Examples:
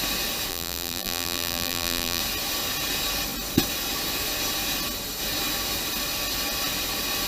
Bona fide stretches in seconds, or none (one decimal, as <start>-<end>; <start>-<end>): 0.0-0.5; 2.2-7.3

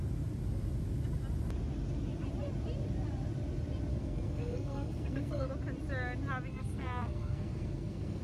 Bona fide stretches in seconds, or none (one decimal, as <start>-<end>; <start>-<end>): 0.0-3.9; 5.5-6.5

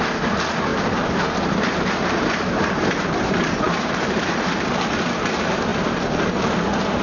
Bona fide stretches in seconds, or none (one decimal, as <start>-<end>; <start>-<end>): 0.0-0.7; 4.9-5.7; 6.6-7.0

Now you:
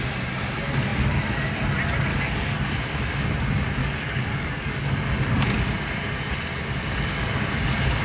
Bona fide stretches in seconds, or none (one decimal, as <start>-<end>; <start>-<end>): 0.0-2.1; 2.7-3.8; 5.4-8.0

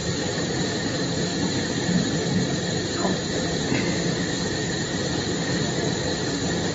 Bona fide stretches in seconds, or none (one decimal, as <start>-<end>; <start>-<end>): 0.7-3.0; 3.8-6.7

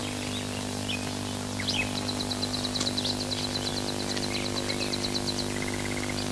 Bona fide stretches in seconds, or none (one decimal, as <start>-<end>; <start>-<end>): 0.0-6.3